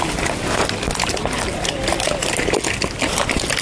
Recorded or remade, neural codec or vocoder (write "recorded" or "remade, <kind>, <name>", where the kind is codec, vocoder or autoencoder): recorded